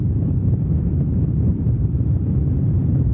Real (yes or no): no